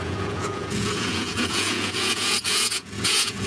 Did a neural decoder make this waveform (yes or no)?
yes